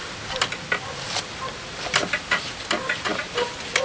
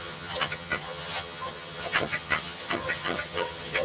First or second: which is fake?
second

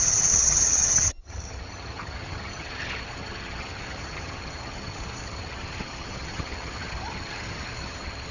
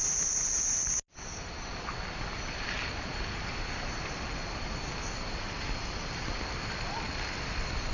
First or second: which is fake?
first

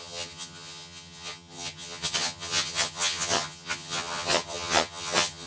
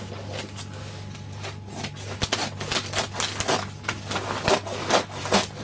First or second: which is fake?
first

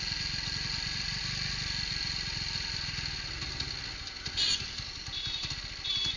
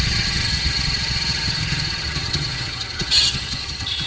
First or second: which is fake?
second